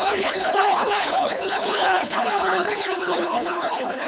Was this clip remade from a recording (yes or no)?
yes